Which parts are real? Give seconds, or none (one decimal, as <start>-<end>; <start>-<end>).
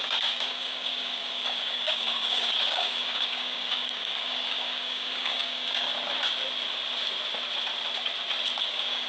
5.9-8.6